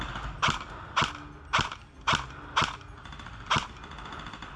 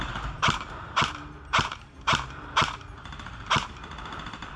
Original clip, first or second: first